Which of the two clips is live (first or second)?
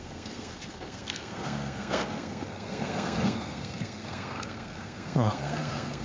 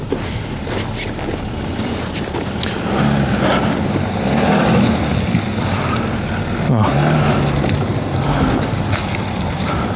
second